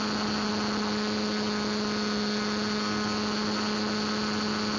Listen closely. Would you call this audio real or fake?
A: real